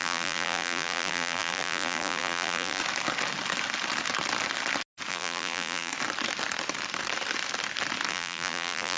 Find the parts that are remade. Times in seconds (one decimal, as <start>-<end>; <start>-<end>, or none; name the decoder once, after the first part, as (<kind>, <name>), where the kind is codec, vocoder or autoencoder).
0.0-2.8 (vocoder, BigVGAN v2); 5.1-5.9; 8.1-9.0